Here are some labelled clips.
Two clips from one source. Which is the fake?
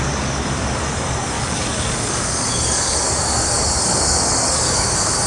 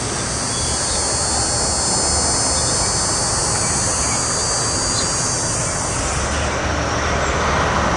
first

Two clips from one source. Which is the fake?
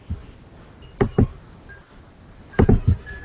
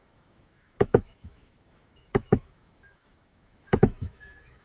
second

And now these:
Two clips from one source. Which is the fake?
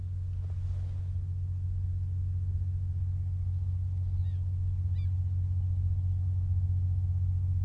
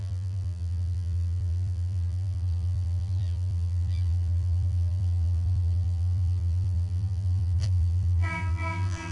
second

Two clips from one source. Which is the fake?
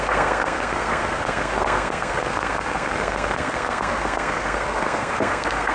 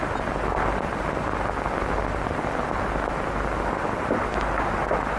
first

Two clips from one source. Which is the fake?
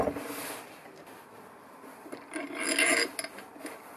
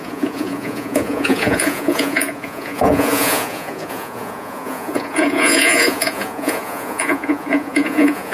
second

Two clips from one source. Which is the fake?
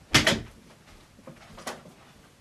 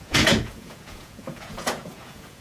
second